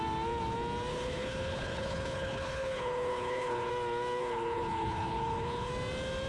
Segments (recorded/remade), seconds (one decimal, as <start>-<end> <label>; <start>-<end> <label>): 0.0-0.9 recorded; 0.9-3.7 remade; 3.7-4.2 recorded; 4.2-5.7 remade; 5.7-6.3 recorded